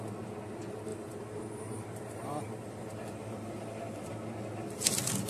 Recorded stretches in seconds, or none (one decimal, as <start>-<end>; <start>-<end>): 0.0-0.9; 4.1-5.3